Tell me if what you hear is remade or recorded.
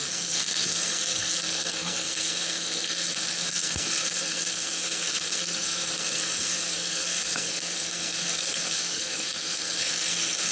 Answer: remade